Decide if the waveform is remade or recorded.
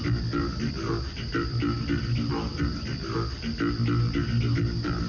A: recorded